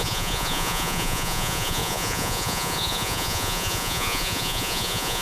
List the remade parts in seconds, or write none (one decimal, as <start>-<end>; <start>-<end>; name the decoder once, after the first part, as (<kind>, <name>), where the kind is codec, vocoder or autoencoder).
0.0-5.2 (vocoder, Vocos)